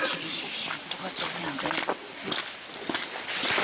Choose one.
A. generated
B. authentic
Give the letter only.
B